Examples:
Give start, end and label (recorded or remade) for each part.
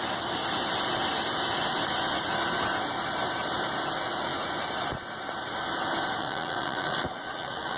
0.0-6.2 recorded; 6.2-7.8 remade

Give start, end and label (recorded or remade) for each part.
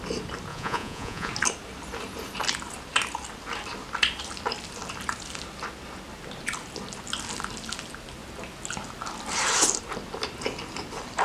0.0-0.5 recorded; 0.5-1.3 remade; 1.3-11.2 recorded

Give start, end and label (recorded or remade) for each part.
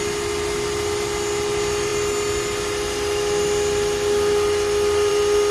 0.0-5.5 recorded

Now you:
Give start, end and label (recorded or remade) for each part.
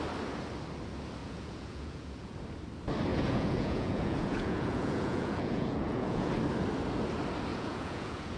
0.0-1.2 recorded; 1.2-2.4 remade; 2.4-3.1 recorded; 3.1-6.3 remade; 6.3-7.5 recorded; 7.5-8.4 remade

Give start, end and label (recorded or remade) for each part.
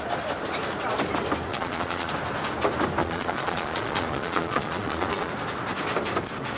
0.0-1.5 recorded; 1.5-2.1 remade; 2.1-3.0 recorded; 3.0-5.3 remade; 5.3-6.6 recorded